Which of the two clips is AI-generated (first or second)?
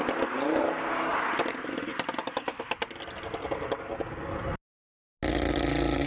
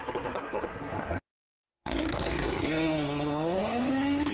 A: second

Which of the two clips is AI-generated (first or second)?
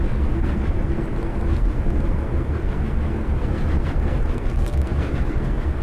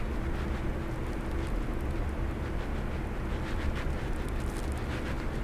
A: first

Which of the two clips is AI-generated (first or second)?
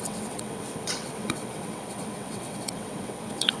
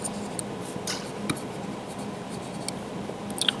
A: first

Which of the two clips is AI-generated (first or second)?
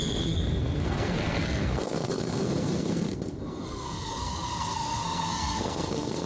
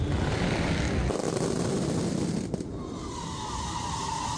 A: first